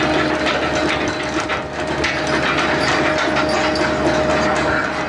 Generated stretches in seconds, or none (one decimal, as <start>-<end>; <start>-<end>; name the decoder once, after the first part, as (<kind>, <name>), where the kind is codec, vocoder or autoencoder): none